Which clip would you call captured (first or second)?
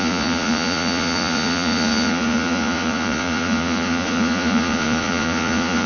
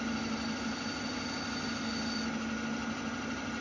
second